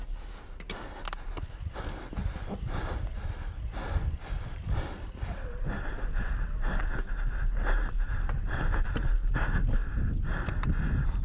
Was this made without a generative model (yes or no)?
yes